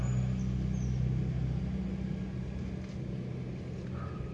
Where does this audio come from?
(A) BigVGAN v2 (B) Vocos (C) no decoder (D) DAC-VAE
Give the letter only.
C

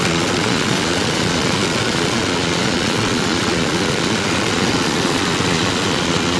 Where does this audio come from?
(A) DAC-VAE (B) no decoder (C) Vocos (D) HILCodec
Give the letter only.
C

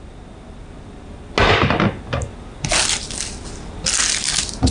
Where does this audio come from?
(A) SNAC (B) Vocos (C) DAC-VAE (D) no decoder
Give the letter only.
D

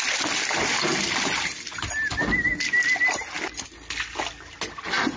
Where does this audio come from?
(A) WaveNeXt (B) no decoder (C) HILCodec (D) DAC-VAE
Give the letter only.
B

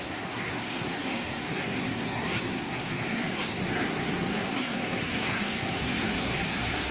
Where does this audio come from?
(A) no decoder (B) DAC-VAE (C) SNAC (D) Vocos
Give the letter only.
C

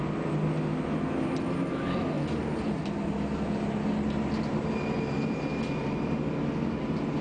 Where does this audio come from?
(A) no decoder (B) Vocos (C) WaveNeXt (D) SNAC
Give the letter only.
A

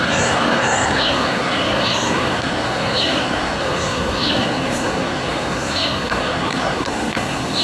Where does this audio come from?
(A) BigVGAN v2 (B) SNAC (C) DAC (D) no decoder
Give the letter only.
B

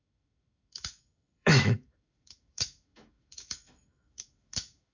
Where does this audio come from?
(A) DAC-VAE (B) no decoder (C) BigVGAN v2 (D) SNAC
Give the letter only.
A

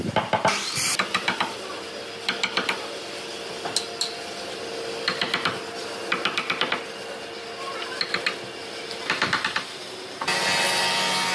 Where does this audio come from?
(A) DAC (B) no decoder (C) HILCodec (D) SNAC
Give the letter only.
B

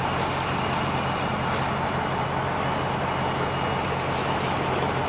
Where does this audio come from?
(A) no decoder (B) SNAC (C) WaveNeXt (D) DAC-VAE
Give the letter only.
A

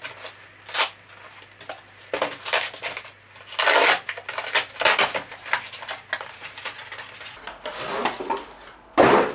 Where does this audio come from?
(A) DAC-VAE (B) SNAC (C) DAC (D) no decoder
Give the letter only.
D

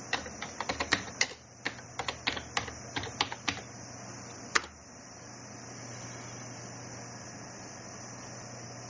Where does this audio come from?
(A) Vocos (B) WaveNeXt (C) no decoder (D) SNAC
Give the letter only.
C